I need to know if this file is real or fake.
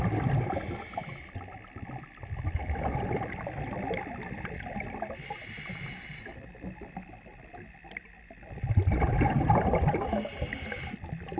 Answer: real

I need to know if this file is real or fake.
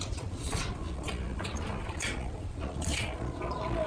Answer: fake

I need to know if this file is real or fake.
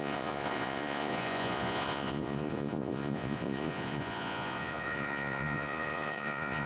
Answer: fake